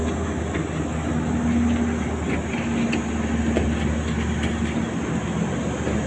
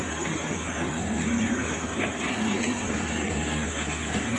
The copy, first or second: second